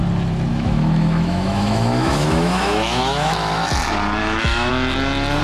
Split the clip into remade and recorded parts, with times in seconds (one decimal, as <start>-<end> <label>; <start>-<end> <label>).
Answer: 0.0-0.5 recorded; 0.5-3.7 remade; 3.7-4.2 recorded; 4.2-4.7 remade; 4.7-5.4 recorded